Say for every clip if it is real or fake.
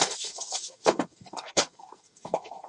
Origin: fake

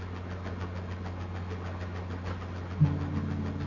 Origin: real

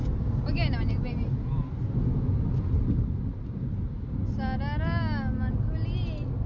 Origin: real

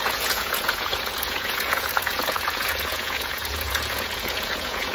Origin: fake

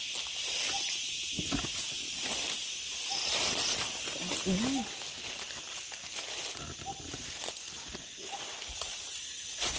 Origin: real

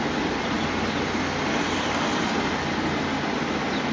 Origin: real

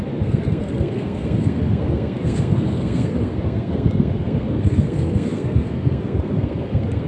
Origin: fake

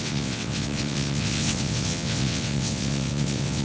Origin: fake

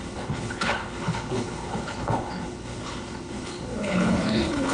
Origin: fake